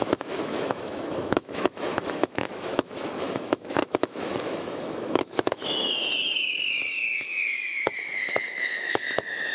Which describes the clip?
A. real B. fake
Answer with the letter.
B